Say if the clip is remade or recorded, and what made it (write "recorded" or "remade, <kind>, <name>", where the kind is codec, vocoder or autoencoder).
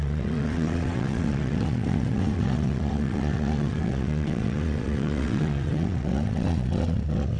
remade, vocoder, WaveNeXt